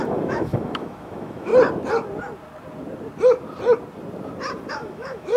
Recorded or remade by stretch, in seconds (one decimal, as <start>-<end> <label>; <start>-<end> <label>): 0.0-1.5 remade; 1.5-4.7 recorded; 4.7-5.4 remade